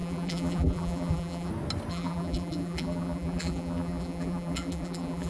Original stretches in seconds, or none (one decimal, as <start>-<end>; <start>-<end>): 1.5-1.9